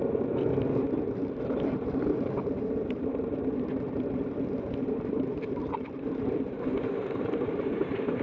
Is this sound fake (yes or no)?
no